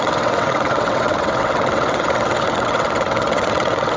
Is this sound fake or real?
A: fake